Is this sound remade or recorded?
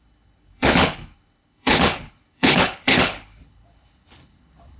remade